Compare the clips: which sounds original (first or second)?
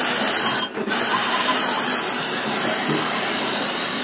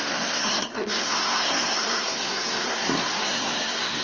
first